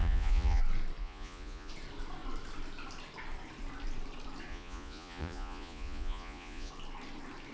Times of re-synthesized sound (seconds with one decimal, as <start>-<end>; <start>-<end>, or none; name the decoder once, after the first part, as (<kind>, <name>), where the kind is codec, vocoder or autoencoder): 0.0-0.6 (vocoder, Vocos); 1.0-1.7; 4.5-6.7